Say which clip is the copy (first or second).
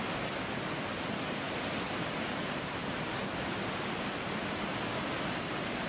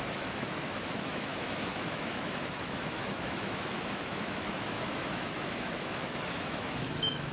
second